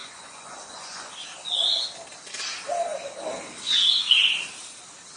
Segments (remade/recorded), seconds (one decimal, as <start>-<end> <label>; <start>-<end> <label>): 0.0-1.1 remade; 1.1-5.2 recorded